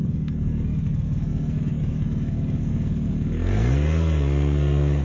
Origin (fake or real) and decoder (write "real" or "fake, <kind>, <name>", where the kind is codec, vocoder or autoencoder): fake, codec, SNAC